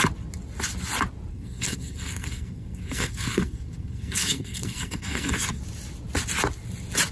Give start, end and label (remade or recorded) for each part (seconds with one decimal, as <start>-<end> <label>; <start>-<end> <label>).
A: 0.0-1.3 recorded; 1.3-5.6 remade; 5.6-7.1 recorded